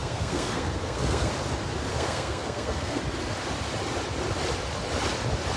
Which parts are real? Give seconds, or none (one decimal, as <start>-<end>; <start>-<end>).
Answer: 1.3-1.9; 3.0-5.6